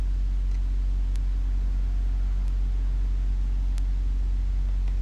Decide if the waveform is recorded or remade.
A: recorded